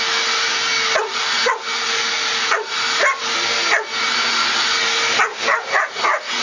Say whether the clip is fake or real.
real